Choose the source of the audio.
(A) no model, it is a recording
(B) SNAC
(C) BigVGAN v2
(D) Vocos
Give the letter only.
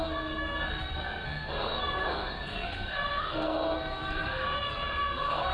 B